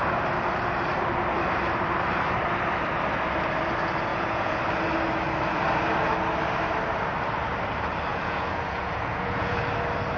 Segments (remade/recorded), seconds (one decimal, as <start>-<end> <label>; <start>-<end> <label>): 0.0-4.1 recorded; 4.1-4.6 remade; 4.6-8.1 recorded; 8.1-9.6 remade; 9.6-10.2 recorded